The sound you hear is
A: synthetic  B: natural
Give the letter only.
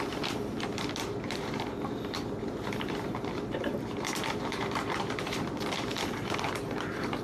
A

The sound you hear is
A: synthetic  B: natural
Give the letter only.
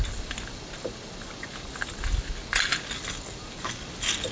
B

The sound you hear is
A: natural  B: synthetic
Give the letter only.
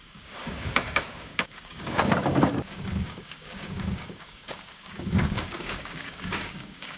B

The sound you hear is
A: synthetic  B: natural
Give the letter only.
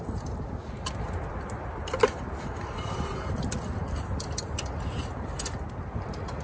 B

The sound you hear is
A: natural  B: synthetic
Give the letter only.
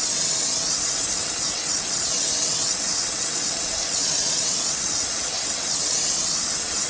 B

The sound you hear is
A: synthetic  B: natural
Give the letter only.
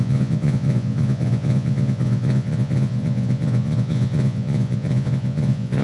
A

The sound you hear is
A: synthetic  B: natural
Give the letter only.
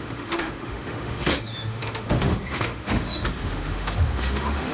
A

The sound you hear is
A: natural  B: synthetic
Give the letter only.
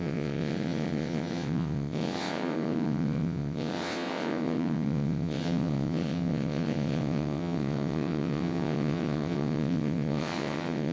B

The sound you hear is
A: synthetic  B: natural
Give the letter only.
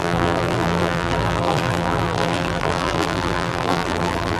A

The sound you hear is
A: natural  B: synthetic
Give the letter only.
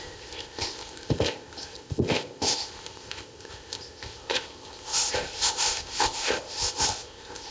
B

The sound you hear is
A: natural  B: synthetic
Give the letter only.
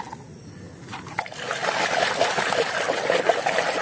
A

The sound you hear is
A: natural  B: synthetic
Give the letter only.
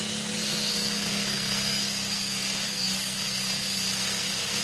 B